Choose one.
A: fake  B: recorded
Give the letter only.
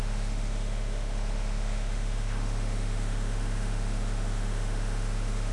A